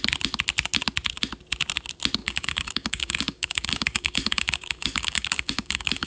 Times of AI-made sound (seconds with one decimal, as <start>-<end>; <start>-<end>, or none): 2.2-6.1